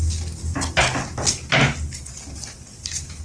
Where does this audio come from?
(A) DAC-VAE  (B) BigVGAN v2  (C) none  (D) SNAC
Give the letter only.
C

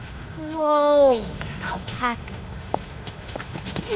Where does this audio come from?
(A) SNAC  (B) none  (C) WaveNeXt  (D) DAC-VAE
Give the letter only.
D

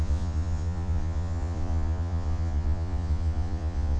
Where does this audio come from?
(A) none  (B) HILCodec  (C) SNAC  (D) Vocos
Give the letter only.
D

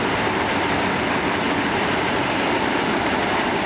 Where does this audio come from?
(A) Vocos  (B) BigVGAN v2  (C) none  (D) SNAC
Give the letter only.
C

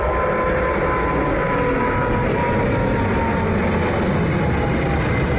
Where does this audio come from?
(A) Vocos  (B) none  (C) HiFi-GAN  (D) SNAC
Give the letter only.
B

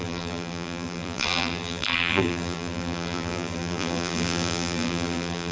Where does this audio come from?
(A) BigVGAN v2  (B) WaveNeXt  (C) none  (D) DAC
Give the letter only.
A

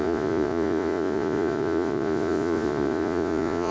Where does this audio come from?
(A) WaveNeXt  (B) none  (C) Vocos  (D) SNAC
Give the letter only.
C